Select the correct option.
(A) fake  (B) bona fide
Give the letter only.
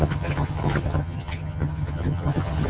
A